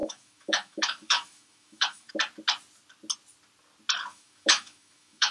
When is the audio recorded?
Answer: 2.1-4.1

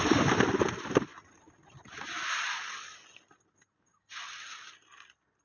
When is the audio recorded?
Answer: 0.0-5.4